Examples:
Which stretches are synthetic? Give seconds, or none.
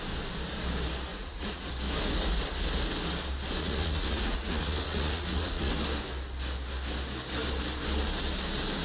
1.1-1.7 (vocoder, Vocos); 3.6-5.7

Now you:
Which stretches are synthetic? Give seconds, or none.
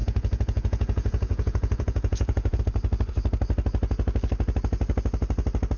0.0-2.6 (vocoder, Vocos)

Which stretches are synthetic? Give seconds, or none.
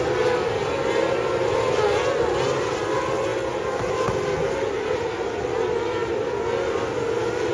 none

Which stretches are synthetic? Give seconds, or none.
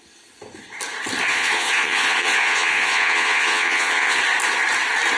1.3-4.2 (vocoder, Vocos)